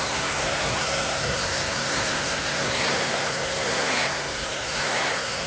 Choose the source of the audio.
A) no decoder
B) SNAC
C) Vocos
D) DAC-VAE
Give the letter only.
B